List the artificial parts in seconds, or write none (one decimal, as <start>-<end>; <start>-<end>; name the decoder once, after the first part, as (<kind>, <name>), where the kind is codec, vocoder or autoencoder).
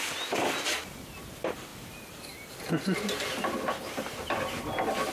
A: none